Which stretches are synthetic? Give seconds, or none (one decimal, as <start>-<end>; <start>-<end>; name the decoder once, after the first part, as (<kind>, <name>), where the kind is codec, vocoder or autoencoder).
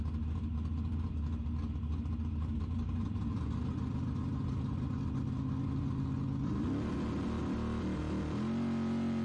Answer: 7.4-8.0 (vocoder, BigVGAN v2)